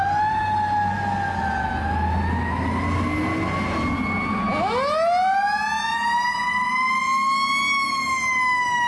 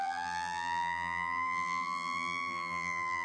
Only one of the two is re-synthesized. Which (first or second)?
second